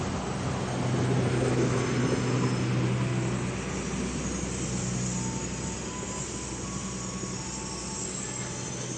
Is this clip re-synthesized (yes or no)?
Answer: no